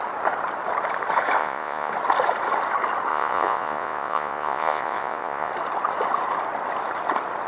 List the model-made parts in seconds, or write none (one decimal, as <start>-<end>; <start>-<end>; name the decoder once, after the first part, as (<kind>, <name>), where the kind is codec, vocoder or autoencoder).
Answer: 1.4-1.9 (vocoder, Vocos); 3.1-5.5